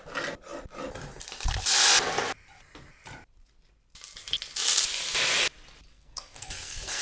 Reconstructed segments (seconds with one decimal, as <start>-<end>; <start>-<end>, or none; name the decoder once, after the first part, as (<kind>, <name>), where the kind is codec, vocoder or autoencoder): 5.9-7.0 (codec, SNAC)